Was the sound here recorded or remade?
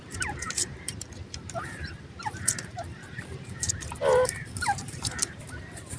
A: remade